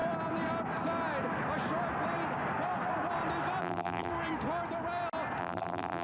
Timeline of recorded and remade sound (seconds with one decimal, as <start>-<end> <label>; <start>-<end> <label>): 0.0-3.6 recorded; 3.6-4.1 remade; 4.1-5.4 recorded; 5.4-6.0 remade